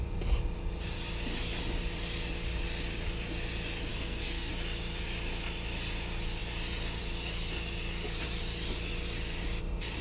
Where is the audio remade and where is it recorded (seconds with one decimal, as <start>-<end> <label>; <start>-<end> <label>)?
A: 0.0-3.9 recorded; 3.9-4.5 remade; 4.5-10.0 recorded